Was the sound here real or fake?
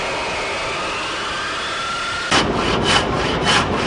real